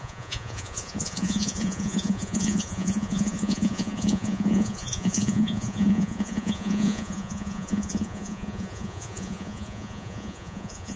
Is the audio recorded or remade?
remade